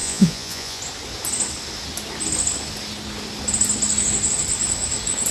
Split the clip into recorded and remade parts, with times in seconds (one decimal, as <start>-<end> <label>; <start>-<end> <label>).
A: 0.0-0.8 remade; 0.8-5.3 recorded